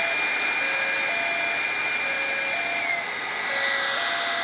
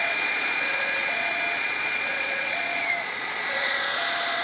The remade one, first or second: second